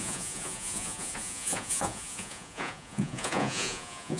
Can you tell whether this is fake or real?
fake